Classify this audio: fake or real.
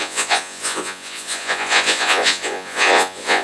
fake